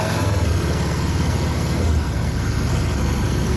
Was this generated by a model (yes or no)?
yes